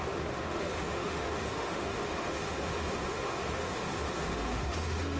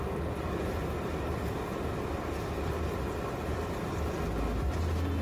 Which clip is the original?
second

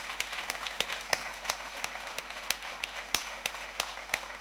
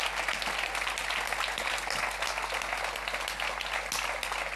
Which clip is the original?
second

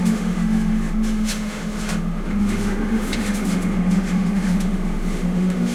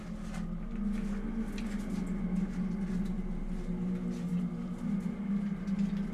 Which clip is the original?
second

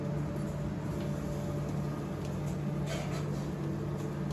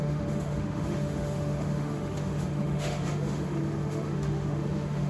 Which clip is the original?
first